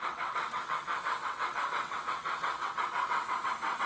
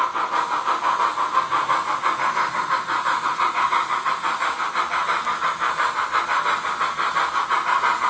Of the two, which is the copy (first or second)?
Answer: first